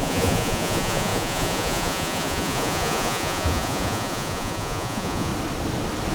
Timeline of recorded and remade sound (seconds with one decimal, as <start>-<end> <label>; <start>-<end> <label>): 0.0-5.3 remade; 5.3-6.1 recorded